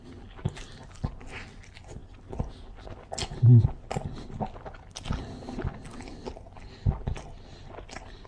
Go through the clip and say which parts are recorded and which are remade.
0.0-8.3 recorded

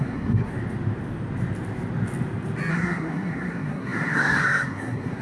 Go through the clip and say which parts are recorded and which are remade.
0.0-0.5 remade; 0.5-2.7 recorded; 2.7-5.2 remade

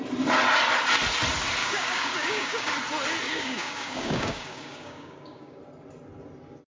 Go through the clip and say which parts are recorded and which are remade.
0.0-1.6 recorded; 1.6-2.7 remade; 2.7-3.3 recorded; 3.3-5.6 remade; 5.6-6.7 recorded

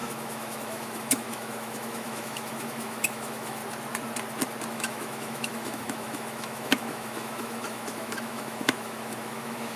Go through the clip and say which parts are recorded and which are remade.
0.0-3.6 remade; 3.6-4.7 recorded; 4.7-9.8 remade

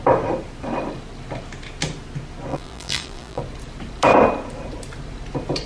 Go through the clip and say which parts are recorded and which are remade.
0.0-2.5 recorded; 2.5-3.4 remade; 3.4-5.7 recorded

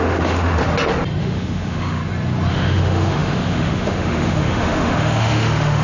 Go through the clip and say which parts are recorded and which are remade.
0.0-0.6 remade; 0.6-1.2 recorded; 1.2-2.0 remade; 2.0-2.5 recorded; 2.5-5.8 remade

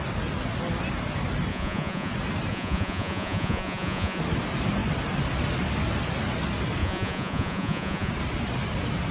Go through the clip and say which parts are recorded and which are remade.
0.0-1.5 recorded; 1.5-2.1 remade; 2.1-2.5 recorded; 2.5-4.2 remade; 4.2-6.8 recorded; 6.8-8.1 remade; 8.1-9.1 recorded